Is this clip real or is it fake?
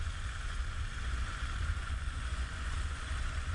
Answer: fake